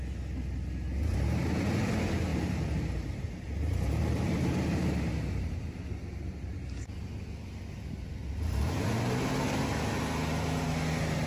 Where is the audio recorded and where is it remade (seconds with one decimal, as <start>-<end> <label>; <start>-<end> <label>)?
0.0-2.3 recorded; 2.3-5.0 remade; 5.0-11.3 recorded